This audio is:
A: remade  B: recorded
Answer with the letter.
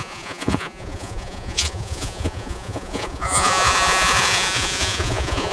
A